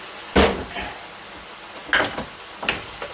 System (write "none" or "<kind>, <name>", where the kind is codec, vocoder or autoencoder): none